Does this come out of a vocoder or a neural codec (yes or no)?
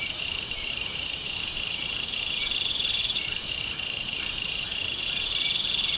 yes